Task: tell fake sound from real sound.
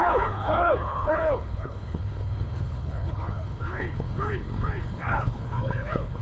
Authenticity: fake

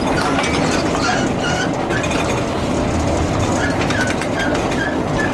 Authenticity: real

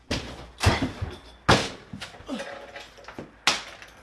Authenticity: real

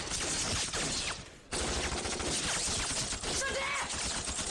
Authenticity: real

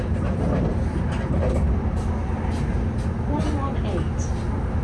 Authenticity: real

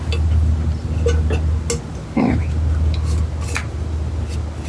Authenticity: real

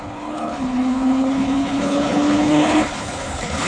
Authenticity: fake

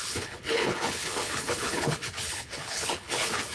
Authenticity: fake